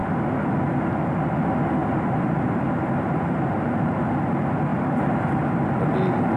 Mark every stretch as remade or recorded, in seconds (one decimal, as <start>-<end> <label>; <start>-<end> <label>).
0.0-1.8 recorded; 1.8-4.0 remade; 4.0-4.7 recorded; 4.7-5.8 remade; 5.8-6.4 recorded